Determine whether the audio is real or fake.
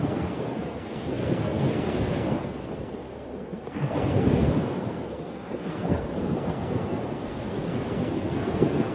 fake